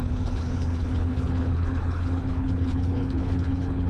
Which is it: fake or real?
fake